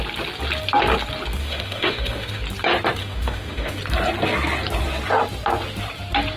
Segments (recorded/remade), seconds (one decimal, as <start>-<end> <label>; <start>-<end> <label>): 0.0-1.4 recorded; 1.4-2.4 remade; 2.4-3.0 recorded; 3.0-3.8 remade; 3.8-6.4 recorded